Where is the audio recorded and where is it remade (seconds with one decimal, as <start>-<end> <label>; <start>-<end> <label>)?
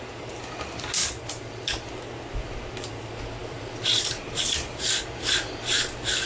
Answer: 0.0-1.0 recorded; 1.0-1.9 remade; 1.9-3.4 recorded; 3.4-5.2 remade; 5.2-6.3 recorded